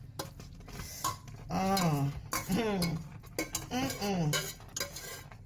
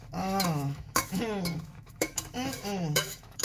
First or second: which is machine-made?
second